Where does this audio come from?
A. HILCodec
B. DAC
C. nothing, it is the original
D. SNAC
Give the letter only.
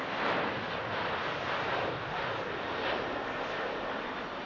C